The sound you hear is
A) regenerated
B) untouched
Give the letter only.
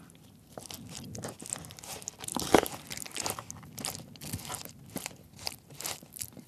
B